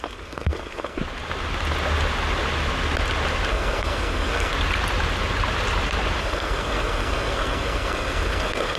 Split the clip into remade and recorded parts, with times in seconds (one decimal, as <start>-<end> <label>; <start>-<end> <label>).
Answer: 0.0-1.0 remade; 1.0-3.5 recorded; 3.5-4.5 remade; 4.5-6.2 recorded; 6.2-8.8 remade